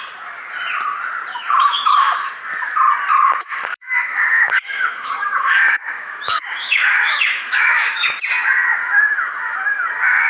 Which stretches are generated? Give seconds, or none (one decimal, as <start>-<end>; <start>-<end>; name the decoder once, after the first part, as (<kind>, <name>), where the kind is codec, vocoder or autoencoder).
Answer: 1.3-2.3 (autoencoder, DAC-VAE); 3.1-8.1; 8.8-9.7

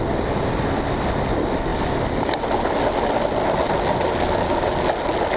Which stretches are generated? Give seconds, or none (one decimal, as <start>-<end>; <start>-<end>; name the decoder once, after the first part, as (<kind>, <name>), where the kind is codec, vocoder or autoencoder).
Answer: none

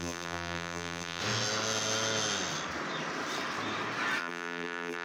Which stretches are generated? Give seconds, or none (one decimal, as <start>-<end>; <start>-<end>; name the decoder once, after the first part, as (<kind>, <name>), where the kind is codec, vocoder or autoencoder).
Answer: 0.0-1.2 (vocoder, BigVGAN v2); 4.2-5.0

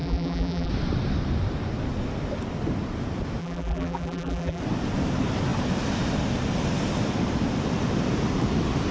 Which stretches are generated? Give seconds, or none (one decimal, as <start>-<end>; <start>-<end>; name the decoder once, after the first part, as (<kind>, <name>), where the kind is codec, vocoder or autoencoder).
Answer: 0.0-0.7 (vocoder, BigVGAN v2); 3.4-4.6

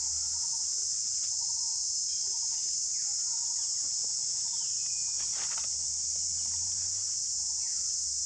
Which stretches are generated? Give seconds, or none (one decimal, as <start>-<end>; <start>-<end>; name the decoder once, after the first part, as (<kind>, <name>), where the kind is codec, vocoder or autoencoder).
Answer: 0.8-1.8 (vocoder, BigVGAN v2)

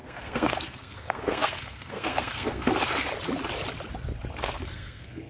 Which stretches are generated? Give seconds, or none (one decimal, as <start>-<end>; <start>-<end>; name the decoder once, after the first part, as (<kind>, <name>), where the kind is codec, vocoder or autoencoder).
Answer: 0.0-2.7 (codec, SNAC); 4.4-5.3

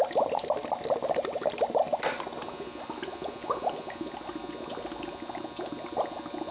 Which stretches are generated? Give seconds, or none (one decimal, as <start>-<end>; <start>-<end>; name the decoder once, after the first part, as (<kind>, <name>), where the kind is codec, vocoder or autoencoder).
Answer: none